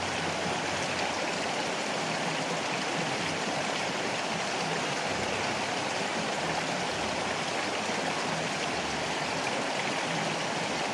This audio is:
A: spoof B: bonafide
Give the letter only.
B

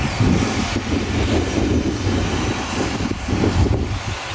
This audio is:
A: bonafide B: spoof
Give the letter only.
A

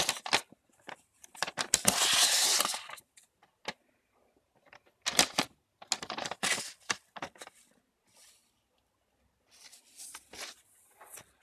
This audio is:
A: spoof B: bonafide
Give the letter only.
B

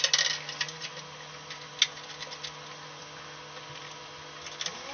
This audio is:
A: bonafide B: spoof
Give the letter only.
A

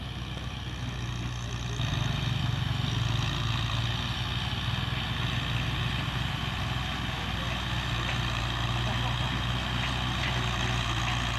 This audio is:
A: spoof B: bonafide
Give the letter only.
B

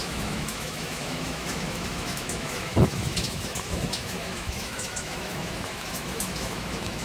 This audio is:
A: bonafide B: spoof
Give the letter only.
B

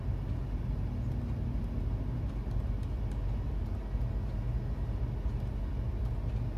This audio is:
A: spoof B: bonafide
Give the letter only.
B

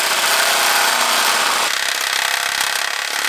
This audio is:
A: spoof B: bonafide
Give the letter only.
B